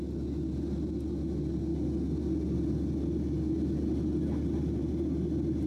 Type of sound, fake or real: real